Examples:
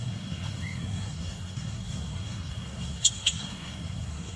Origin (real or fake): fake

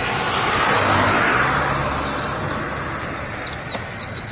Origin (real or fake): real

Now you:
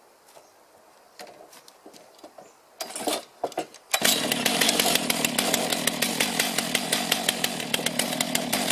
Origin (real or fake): real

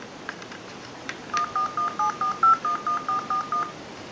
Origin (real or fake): real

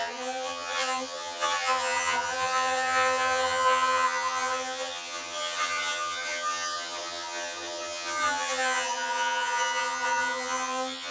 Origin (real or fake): fake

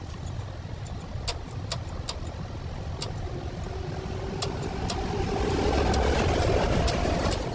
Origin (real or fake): real